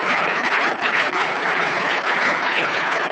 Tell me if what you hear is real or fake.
fake